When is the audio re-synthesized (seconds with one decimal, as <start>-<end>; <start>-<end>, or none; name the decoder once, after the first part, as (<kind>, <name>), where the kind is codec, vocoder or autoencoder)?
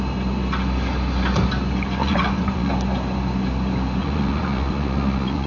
2.0-2.7 (vocoder, Vocos); 4.0-5.5